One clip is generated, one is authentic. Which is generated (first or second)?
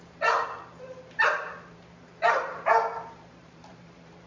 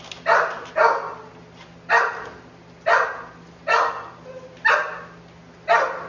first